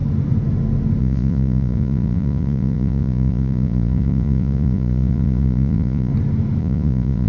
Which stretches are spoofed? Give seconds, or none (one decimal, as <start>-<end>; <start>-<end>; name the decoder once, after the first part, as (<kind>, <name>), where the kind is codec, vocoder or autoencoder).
1.0-6.1 (vocoder, Vocos); 6.6-7.3